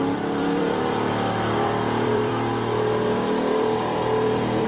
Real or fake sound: fake